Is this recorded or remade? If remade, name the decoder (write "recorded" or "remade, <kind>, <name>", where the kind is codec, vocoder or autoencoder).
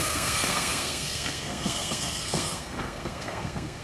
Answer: remade, codec, SNAC